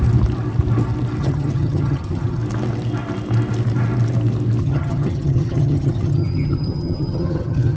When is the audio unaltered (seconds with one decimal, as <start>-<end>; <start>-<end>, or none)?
0.0-1.2; 2.4-4.6